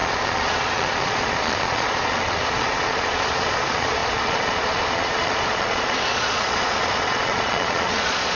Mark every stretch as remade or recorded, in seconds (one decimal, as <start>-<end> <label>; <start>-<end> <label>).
0.0-8.3 remade